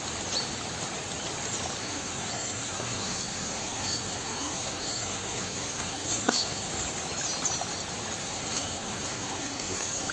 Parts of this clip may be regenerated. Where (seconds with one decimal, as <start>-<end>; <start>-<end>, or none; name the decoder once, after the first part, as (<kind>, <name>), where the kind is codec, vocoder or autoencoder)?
1.8-6.7 (codec, SNAC); 8.2-10.1